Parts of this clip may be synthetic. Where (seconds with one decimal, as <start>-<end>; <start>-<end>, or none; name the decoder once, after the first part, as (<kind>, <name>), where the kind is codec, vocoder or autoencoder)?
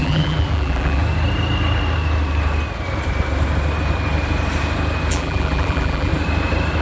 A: 0.0-1.0 (vocoder, BigVGAN v2); 5.1-6.1